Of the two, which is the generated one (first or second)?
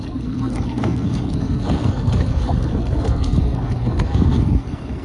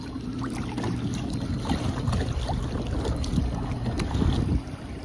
first